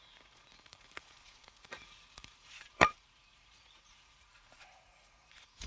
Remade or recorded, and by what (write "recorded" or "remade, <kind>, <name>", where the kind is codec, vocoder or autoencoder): remade, vocoder, Vocos